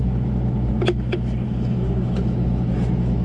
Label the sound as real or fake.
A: fake